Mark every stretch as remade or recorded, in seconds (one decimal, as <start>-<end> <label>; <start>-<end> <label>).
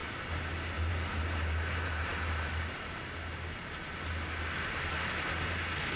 0.0-6.0 recorded